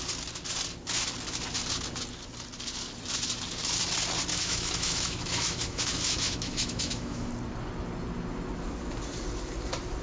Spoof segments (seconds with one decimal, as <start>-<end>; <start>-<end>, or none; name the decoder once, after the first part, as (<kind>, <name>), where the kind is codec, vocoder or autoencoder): 4.3-7.3 (autoencoder, DAC-VAE)

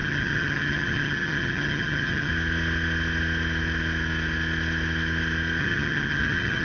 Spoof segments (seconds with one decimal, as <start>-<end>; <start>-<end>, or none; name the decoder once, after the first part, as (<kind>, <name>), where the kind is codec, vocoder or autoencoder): 0.0-2.3 (vocoder, HiFi-GAN); 5.6-6.6

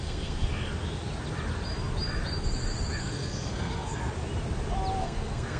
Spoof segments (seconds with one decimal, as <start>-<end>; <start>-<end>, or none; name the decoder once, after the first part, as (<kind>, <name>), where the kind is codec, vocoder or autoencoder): 0.0-0.5 (codec, SNAC); 3.0-4.0; 5.0-5.6